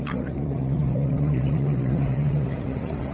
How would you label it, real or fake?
fake